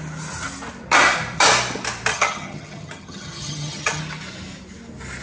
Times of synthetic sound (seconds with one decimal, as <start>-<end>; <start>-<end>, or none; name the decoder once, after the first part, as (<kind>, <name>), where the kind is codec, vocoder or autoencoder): 2.1-4.0 (vocoder, HiFi-GAN)

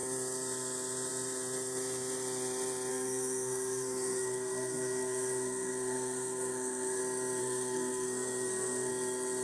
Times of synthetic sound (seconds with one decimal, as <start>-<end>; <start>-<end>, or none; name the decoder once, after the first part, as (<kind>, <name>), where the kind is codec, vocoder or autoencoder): 2.9-7.0 (codec, SNAC); 7.4-8.9

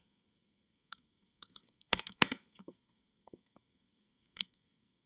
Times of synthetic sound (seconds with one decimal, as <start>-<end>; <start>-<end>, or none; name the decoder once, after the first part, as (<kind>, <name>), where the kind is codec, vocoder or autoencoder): 0.0-5.1 (codec, SNAC)

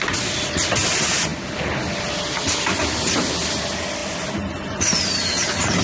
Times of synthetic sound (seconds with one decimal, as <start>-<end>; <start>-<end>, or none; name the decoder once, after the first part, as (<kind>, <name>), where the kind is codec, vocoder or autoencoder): none

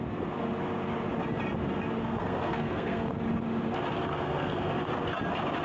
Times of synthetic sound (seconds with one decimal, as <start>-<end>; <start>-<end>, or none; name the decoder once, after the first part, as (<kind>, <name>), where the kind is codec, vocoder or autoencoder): 2.0-3.1 (codec, SNAC); 4.1-4.7

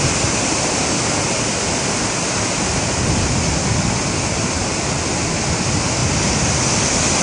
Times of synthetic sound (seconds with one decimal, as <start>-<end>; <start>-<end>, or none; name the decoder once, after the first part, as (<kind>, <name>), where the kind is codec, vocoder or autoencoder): none

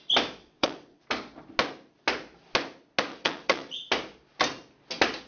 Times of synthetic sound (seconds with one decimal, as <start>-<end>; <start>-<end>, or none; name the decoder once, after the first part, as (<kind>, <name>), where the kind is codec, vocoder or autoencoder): 0.4-1.0 (vocoder, WaveNeXt); 3.1-3.9